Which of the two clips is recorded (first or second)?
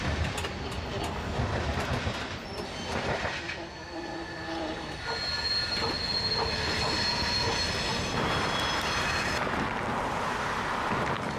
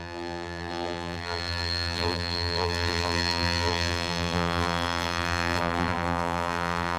first